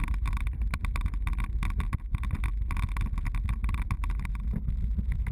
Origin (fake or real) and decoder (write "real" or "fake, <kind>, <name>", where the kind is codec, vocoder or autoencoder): real